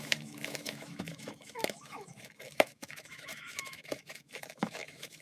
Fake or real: fake